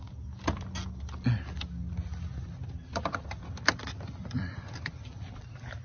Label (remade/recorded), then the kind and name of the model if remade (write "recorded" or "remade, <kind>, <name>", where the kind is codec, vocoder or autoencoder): recorded